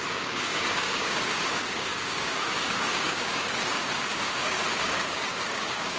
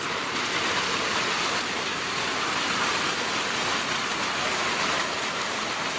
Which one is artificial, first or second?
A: first